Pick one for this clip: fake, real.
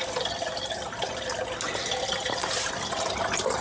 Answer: real